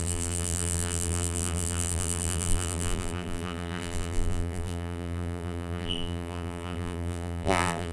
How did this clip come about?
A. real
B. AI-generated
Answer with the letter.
B